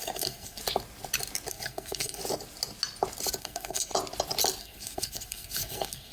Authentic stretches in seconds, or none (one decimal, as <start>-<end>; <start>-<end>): 0.6-1.5; 2.2-3.4; 3.9-4.6